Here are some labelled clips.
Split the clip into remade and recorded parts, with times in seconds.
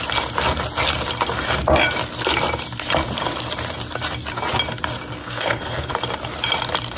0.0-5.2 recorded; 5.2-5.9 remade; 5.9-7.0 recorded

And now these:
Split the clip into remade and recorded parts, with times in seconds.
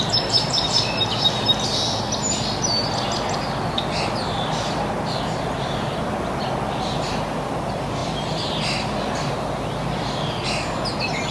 0.0-11.3 recorded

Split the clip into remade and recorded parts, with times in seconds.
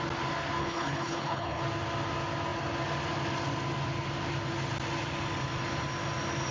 0.0-0.6 recorded; 0.6-1.6 remade; 1.6-6.5 recorded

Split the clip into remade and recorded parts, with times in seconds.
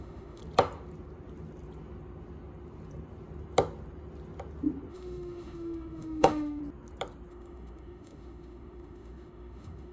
0.0-0.4 remade; 0.4-4.9 recorded; 4.9-6.6 remade; 6.6-7.3 recorded; 7.3-9.9 remade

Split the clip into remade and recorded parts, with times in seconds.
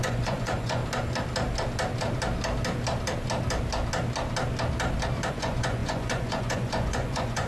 0.0-0.8 remade; 0.8-5.3 recorded; 5.3-7.5 remade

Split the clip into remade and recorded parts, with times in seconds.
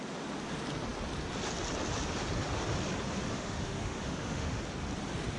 0.0-3.3 recorded; 3.3-4.6 remade; 4.6-5.4 recorded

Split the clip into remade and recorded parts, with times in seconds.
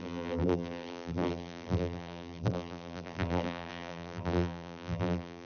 0.0-5.5 remade